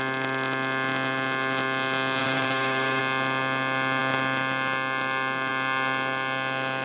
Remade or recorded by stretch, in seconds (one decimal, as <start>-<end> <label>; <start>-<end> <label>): 0.0-2.2 recorded; 2.2-3.0 remade; 3.0-6.8 recorded